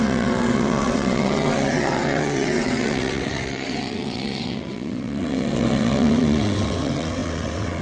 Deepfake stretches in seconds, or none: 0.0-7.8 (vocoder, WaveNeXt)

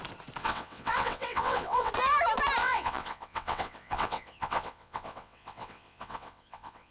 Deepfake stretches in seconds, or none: 0.4-1.9 (vocoder, WaveNeXt); 2.6-6.9

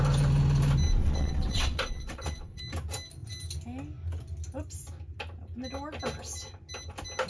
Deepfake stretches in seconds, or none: 1.0-2.6 (vocoder, WaveNeXt)